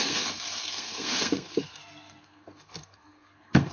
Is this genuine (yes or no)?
no